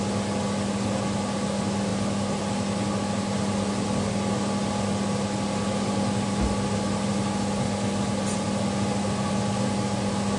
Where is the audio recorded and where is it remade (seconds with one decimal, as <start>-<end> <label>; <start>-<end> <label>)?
0.0-10.4 recorded